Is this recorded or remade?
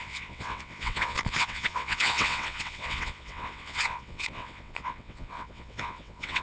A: remade